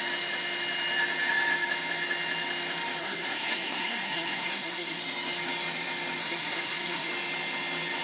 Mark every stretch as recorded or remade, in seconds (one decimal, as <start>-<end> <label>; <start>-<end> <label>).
0.0-3.0 recorded; 3.0-5.0 remade; 5.0-6.2 recorded; 6.2-7.1 remade; 7.1-8.0 recorded